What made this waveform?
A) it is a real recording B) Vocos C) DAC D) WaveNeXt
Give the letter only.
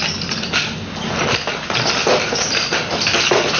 A